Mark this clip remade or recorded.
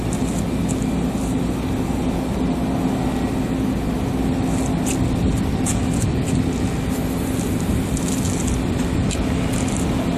recorded